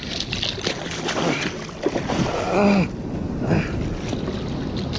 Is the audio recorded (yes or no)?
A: yes